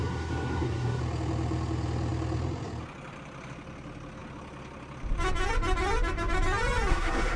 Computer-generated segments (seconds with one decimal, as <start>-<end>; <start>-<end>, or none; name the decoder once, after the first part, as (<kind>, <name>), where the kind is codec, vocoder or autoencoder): 0.0-1.0 (codec, SNAC); 6.9-7.4